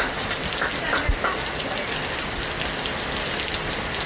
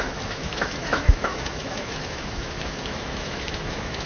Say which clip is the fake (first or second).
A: second